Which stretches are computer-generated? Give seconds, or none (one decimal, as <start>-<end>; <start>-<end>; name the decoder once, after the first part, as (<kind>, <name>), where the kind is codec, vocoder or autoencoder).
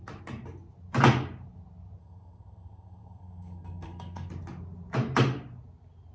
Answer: 2.0-4.3 (codec, SNAC)